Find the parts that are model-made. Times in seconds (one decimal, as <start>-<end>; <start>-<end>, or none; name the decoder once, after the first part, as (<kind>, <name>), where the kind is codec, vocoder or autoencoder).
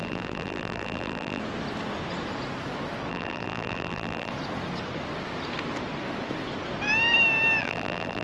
0.0-1.4 (vocoder, BigVGAN v2); 3.1-4.3; 7.6-8.2